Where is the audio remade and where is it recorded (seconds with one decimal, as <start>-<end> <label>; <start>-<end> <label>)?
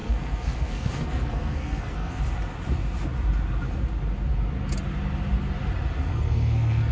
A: 0.0-2.2 remade; 2.2-6.1 recorded; 6.1-6.9 remade